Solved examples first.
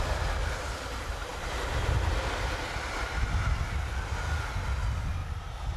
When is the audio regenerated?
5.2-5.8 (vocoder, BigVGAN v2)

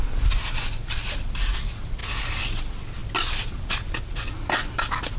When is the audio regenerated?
none

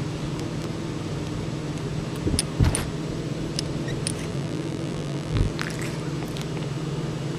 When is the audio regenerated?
4.3-5.5 (vocoder, BigVGAN v2)

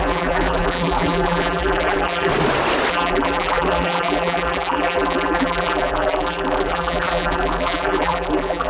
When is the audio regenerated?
0.0-2.3 (vocoder, BigVGAN v2); 2.9-8.7

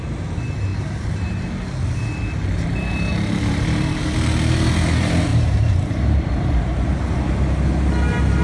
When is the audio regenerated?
0.7-1.5 (vocoder, BigVGAN v2); 3.1-4.0; 5.3-7.1

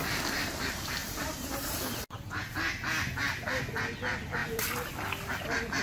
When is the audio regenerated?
1.0-2.0 (vocoder, BigVGAN v2); 4.4-4.9

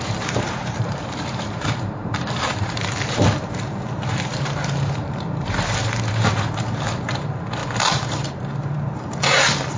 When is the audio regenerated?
0.0-9.8 (vocoder, BigVGAN v2)